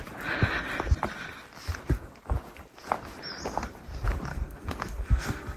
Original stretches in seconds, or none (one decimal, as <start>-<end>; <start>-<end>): 0.0-4.3